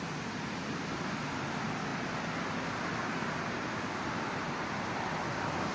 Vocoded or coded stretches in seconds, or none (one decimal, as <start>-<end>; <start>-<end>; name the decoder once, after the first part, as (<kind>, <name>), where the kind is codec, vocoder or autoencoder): 0.0-5.7 (vocoder, BigVGAN v2)